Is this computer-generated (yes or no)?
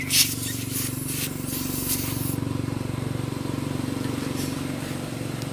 no